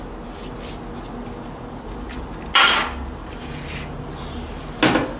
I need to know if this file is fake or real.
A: real